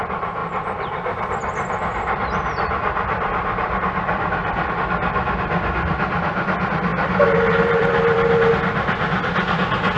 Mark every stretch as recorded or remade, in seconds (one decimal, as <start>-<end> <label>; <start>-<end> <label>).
0.0-0.4 recorded; 0.4-4.7 remade; 4.7-6.9 recorded; 6.9-8.5 remade; 8.5-10.0 recorded

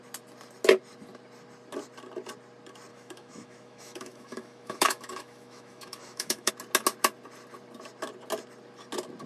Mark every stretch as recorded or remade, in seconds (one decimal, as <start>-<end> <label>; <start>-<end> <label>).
0.0-2.9 recorded; 2.9-6.5 remade; 6.5-9.3 recorded